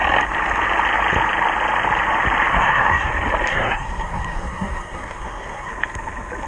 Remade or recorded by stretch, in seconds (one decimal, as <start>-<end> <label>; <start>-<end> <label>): 0.0-2.5 recorded; 2.5-3.1 remade; 3.1-3.5 recorded; 3.5-5.7 remade; 5.7-6.5 recorded

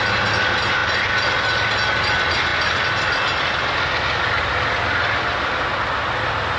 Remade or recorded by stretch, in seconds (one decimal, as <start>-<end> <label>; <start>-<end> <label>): 0.0-6.6 recorded